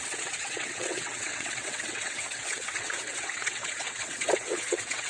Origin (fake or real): fake